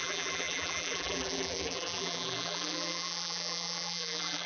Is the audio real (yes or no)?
no